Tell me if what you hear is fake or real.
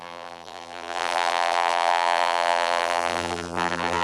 fake